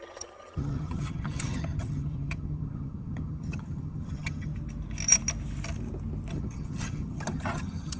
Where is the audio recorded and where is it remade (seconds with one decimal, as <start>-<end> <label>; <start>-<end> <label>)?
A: 0.0-4.5 remade; 4.5-6.3 recorded; 6.3-8.0 remade

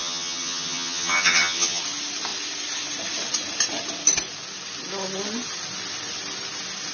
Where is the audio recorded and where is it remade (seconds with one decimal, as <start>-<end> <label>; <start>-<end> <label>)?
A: 0.0-1.8 remade; 1.8-6.9 recorded

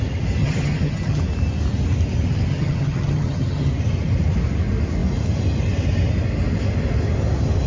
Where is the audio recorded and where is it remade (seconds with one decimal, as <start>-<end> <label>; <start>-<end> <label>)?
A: 0.0-0.4 recorded; 0.4-1.2 remade; 1.2-2.5 recorded; 2.5-3.7 remade; 3.7-7.7 recorded

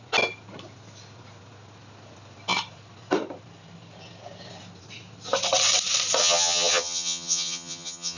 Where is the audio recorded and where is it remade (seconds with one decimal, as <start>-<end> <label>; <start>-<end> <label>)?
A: 0.0-6.2 recorded; 6.2-8.2 remade